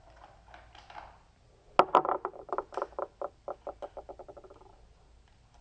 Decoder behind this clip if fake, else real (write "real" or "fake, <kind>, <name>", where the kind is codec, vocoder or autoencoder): real